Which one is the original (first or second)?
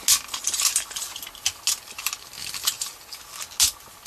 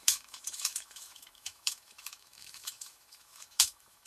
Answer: first